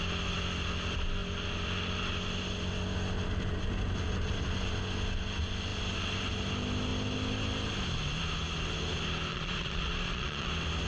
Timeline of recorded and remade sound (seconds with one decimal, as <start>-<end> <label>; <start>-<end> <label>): 0.0-9.3 recorded; 9.3-10.5 remade; 10.5-10.9 recorded